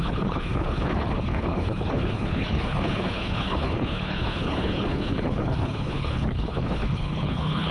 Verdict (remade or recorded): remade